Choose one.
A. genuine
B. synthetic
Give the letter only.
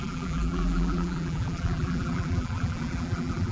B